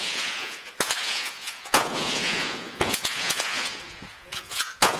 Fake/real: fake